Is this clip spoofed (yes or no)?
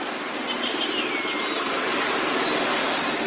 no